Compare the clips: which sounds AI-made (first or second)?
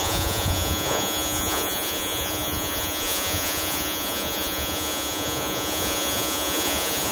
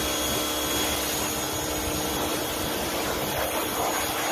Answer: first